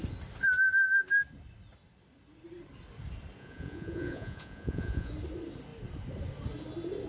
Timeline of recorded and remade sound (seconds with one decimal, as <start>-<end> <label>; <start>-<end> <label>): 0.0-3.4 recorded; 3.4-5.1 remade; 5.1-7.1 recorded